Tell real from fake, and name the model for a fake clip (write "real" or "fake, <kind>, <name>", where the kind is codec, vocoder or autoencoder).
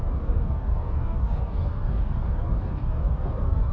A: fake, codec, DAC